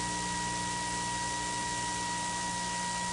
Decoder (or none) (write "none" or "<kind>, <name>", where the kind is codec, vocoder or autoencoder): none